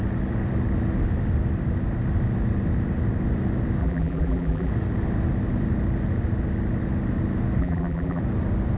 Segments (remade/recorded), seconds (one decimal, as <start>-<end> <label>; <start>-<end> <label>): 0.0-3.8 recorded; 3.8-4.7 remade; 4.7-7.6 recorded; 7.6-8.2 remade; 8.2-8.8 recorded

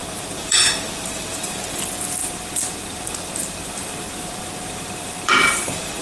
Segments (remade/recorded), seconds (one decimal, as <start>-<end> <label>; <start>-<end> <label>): 0.0-1.6 remade; 1.6-2.2 recorded; 2.2-6.0 remade

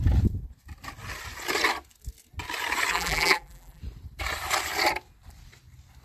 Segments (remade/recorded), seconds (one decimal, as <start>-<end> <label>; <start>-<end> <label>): 0.0-2.9 recorded; 2.9-3.8 remade; 3.8-6.0 recorded

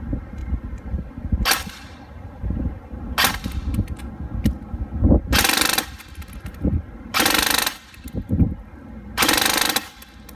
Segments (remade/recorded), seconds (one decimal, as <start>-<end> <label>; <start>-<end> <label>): 0.0-10.4 recorded

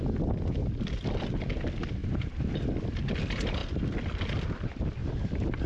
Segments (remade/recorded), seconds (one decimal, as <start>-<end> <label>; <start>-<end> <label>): 0.0-2.0 recorded; 2.0-2.5 remade; 2.5-5.0 recorded; 5.0-5.7 remade

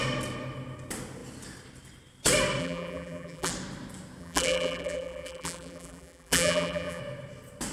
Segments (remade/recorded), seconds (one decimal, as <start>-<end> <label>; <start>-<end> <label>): 0.0-2.6 recorded; 2.6-3.5 remade; 3.5-4.2 recorded; 4.2-7.0 remade; 7.0-7.7 recorded